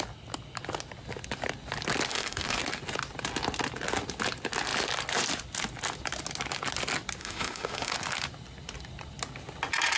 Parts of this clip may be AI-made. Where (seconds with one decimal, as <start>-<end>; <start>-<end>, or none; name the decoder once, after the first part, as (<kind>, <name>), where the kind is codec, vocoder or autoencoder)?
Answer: 2.1-2.6 (autoencoder, DAC-VAE); 7.2-7.9